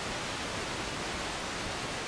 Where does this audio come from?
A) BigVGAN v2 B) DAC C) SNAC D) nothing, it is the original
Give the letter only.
D